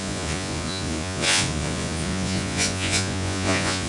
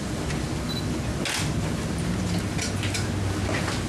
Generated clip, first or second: first